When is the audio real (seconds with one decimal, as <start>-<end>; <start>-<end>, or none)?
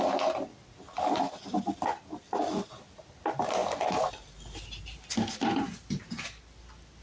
0.0-7.0